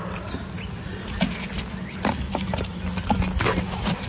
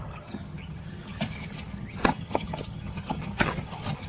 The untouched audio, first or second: first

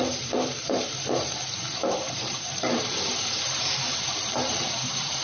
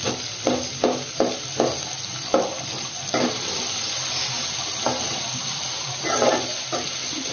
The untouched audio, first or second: second